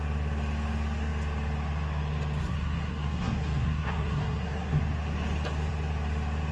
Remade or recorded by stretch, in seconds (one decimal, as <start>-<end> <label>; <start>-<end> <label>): 0.0-2.4 recorded; 2.4-4.8 remade; 4.8-6.5 recorded